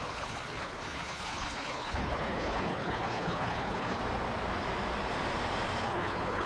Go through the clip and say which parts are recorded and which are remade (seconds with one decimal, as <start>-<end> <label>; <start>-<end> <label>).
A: 0.0-4.0 remade; 4.0-5.8 recorded; 5.8-6.5 remade